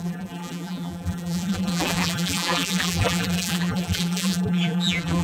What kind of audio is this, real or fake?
fake